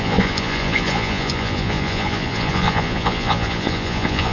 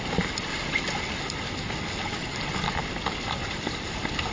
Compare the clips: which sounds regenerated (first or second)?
first